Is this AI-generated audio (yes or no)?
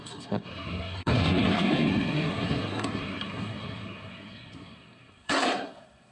yes